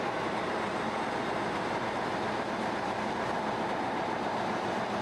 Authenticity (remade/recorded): recorded